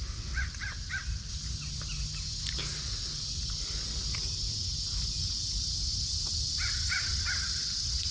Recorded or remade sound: recorded